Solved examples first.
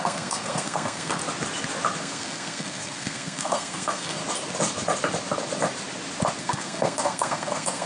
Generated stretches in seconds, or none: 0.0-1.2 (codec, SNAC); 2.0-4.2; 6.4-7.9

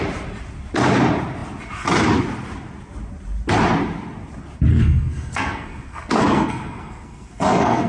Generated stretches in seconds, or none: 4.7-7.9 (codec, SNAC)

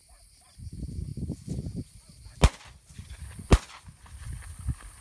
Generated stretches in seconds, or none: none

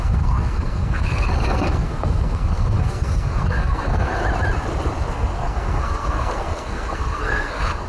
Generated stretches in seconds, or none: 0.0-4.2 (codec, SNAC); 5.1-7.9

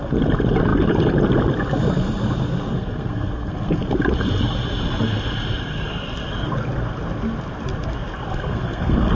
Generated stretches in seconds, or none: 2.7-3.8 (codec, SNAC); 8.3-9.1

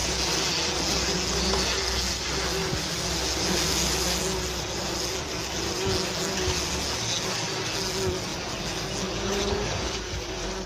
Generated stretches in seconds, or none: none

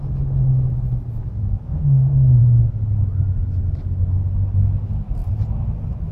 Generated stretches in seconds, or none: 1.5-2.4 (codec, SNAC)

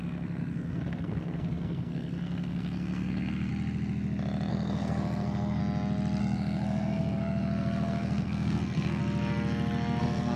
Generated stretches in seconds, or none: 0.0-3.5 (codec, SNAC); 4.5-5.6; 6.2-9.0; 10.0-10.4